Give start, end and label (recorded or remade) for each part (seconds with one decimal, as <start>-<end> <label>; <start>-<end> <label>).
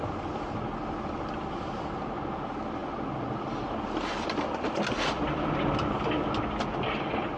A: 0.0-7.4 recorded